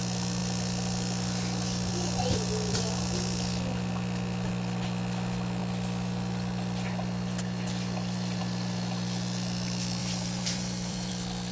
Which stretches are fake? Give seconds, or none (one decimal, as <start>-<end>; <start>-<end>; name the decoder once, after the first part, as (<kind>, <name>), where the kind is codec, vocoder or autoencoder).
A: 10.0-11.1 (vocoder, BigVGAN v2)